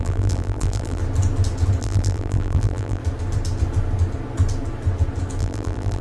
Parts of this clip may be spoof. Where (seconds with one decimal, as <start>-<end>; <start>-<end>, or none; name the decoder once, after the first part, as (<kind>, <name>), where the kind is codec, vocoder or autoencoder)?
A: 0.0-1.0 (vocoder, BigVGAN v2); 1.8-3.0; 5.4-6.0